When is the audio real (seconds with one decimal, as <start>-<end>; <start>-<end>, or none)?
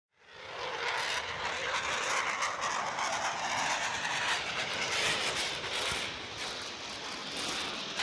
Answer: 0.0-1.6; 2.3-3.9; 4.9-8.0